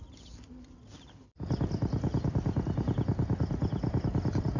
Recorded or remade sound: recorded